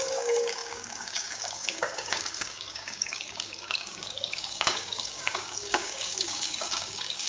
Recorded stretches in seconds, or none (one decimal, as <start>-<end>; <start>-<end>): none